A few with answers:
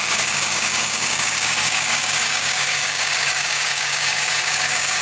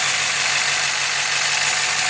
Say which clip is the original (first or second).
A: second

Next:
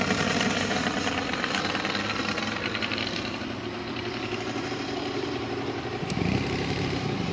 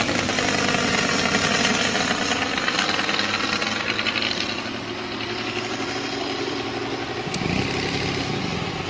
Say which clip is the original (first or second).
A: second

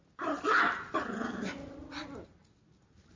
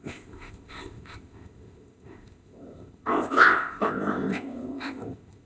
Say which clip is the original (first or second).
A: first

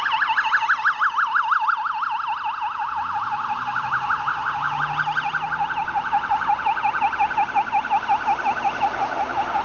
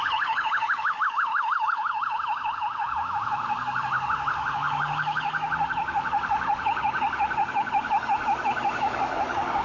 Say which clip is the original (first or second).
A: first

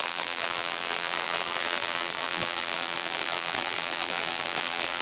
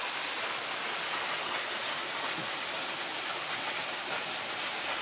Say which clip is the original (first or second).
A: second